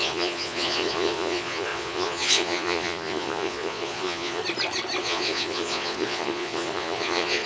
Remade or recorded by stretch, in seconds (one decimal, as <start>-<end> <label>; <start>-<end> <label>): 0.0-4.4 remade; 4.4-5.0 recorded; 5.0-7.5 remade